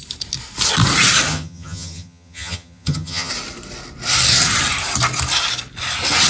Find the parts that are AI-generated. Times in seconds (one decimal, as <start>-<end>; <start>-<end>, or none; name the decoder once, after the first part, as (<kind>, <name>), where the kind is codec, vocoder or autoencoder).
1.3-3.3 (vocoder, HiFi-GAN)